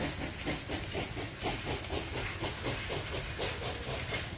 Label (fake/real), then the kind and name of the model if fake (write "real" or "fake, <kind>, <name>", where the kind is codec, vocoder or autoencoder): real